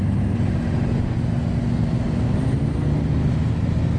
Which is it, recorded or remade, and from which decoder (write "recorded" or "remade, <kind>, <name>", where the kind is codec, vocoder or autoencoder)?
recorded